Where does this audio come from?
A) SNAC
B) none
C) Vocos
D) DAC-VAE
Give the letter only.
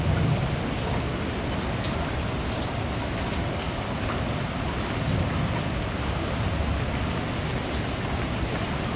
B